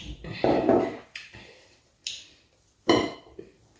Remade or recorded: remade